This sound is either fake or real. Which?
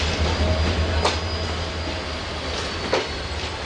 real